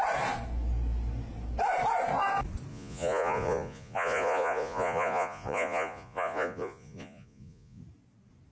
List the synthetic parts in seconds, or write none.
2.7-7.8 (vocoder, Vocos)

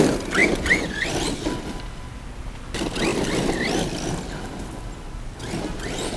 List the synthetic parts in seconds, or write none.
0.4-1.1 (vocoder, Vocos)

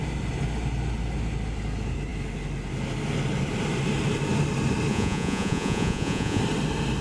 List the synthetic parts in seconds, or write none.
4.9-6.4 (vocoder, Vocos)